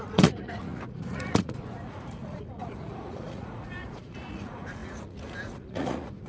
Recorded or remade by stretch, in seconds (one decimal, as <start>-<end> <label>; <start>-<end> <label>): 0.0-6.3 remade